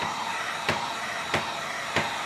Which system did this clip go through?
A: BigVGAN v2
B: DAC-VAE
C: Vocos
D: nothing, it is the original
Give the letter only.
D